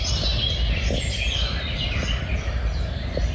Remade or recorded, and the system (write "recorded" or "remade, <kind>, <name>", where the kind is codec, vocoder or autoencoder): recorded